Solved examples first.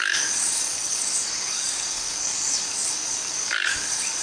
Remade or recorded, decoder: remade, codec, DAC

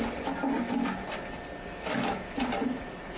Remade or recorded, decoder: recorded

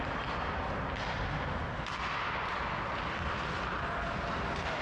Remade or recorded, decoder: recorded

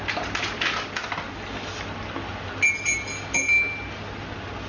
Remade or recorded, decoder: recorded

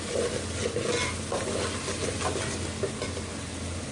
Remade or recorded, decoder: recorded